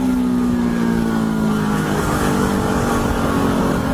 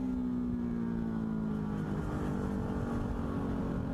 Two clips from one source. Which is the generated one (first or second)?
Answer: first